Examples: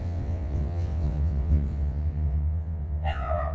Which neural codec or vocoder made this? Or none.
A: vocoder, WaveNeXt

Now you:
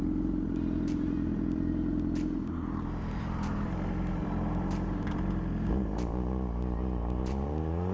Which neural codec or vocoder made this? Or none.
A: vocoder, BigVGAN v2